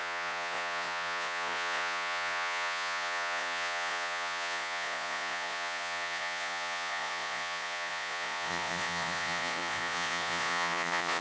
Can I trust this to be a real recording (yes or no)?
no